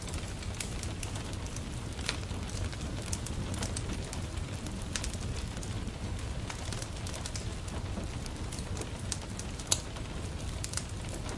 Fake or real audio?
real